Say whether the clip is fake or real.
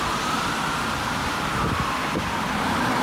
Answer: fake